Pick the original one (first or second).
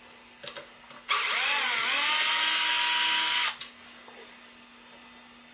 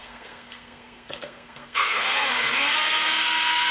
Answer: first